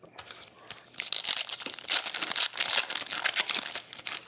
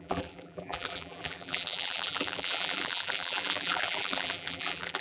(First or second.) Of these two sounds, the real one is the first